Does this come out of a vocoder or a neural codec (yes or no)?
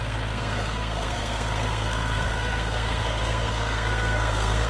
yes